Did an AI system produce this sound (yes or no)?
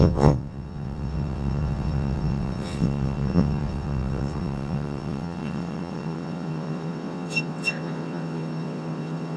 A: yes